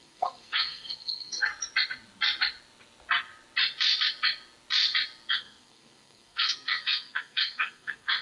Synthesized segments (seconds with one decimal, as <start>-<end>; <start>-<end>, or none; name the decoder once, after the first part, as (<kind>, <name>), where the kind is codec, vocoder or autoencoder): 0.0-1.5 (codec, SNAC); 5.3-8.2